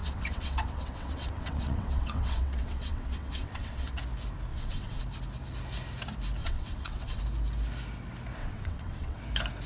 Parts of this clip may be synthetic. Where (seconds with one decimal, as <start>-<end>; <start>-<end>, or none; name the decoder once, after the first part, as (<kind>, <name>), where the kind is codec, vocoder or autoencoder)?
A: 0.0-4.0 (vocoder, WaveNeXt); 4.5-5.0; 6.4-7.2; 8.4-9.2